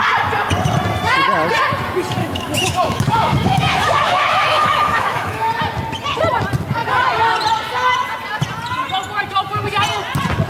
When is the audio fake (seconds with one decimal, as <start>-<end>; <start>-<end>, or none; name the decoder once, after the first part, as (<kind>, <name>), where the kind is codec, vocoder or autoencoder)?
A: 2.2-5.5 (autoencoder, DAC-VAE)